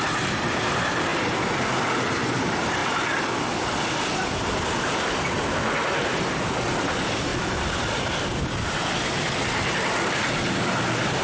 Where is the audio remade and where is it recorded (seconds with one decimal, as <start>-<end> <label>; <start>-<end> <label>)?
0.0-11.2 recorded